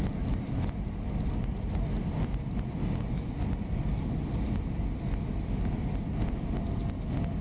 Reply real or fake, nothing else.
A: real